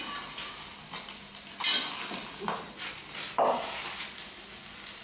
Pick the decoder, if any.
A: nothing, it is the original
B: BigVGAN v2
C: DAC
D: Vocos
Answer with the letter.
A